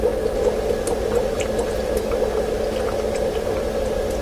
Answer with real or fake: real